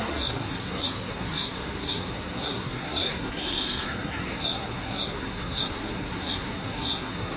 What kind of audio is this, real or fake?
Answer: fake